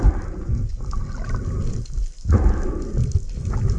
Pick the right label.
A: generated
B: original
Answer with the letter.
B